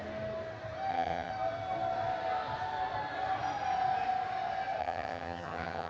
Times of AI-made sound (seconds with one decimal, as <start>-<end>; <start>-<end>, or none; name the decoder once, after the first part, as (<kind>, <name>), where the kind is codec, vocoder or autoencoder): 0.9-1.3 (vocoder, HiFi-GAN); 4.8-5.9